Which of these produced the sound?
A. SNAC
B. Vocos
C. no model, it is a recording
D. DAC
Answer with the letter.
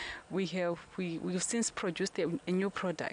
C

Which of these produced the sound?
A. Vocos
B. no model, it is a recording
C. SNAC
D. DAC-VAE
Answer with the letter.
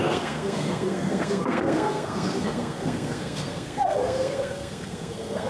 C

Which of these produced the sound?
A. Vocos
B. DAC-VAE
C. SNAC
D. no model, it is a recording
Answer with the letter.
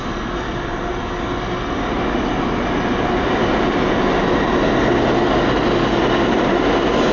D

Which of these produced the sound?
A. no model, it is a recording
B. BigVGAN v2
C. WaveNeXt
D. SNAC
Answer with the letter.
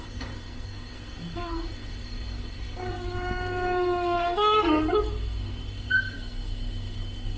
D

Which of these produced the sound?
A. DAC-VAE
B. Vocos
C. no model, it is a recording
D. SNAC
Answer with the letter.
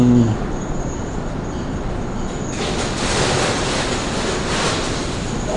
C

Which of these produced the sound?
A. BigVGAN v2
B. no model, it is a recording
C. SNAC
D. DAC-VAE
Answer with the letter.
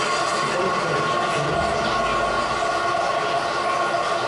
B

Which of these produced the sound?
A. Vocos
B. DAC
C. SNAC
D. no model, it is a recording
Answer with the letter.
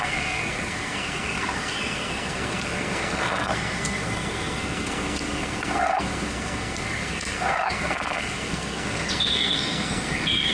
C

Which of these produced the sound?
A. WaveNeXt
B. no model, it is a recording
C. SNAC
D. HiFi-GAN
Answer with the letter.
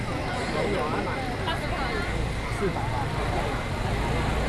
B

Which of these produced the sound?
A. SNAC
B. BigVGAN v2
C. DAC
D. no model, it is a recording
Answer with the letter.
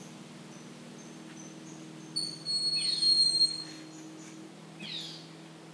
D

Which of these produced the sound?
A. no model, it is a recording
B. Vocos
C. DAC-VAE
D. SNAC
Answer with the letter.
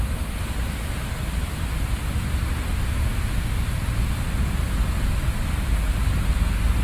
A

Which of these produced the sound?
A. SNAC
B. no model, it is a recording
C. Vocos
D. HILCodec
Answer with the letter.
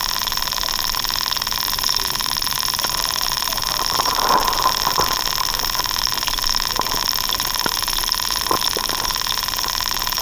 B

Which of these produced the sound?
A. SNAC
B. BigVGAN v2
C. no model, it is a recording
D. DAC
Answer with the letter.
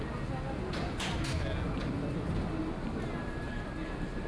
C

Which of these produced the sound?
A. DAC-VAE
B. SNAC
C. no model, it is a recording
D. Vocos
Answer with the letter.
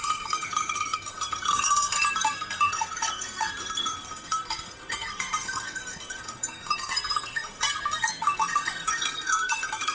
B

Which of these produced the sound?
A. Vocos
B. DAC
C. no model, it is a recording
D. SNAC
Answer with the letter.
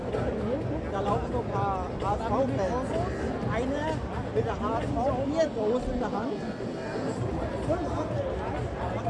C